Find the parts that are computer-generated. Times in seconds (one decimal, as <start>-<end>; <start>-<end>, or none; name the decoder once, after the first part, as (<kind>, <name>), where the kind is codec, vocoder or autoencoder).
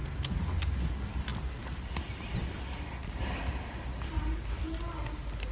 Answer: none